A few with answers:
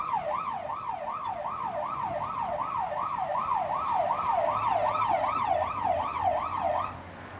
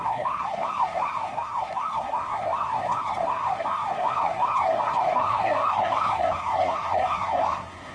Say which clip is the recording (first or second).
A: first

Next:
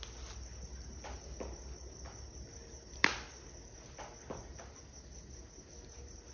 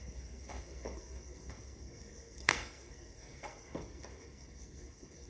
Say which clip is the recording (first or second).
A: first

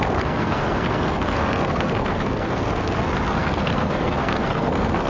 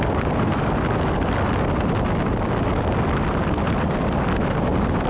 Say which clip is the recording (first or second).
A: second